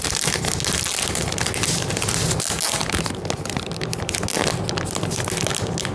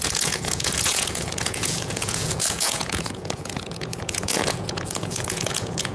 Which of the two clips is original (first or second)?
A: first